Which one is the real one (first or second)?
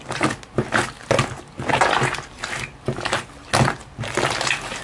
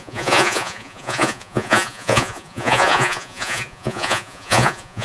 first